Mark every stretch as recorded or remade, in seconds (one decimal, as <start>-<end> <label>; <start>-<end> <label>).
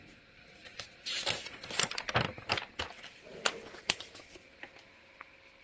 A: 0.0-5.6 recorded